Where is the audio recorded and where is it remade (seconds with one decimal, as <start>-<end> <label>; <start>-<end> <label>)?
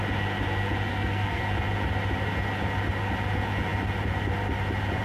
0.0-0.9 recorded; 0.9-1.4 remade; 1.4-5.0 recorded